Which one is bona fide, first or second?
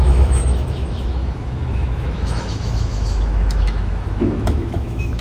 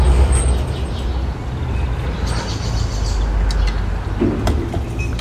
second